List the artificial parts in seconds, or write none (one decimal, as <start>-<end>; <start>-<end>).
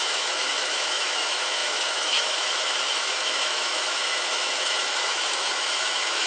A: 0.0-6.3